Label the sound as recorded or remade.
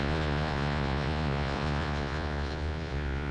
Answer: remade